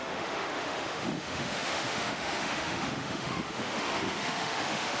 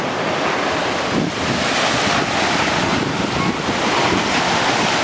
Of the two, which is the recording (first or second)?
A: second